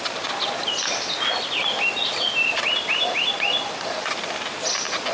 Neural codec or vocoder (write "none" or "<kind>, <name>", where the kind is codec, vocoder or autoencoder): none